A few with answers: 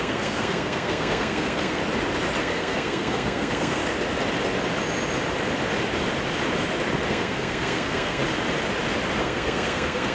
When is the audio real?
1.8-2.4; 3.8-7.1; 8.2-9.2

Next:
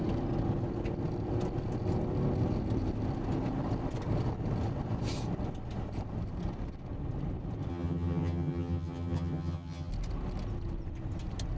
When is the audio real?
0.0-7.7; 9.9-11.6

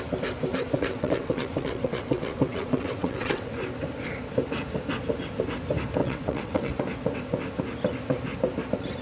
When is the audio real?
0.0-0.5; 3.6-6.0; 6.8-9.0

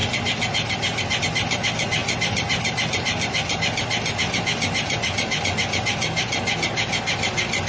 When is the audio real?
1.2-2.0; 5.4-7.7

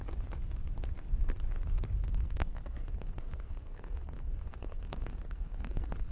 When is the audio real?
0.0-2.0

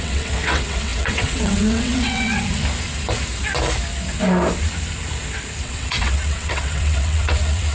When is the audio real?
2.6-5.6